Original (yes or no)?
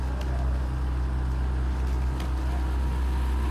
yes